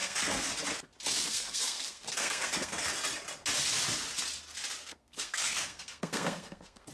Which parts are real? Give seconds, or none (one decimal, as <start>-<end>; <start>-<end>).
0.5-1.2; 2.9-4.8